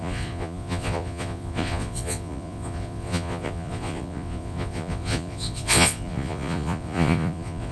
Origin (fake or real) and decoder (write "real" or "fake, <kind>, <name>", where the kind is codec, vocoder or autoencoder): fake, vocoder, Vocos